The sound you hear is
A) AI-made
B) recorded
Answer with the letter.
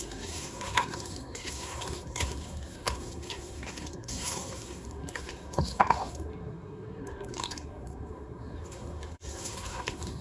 A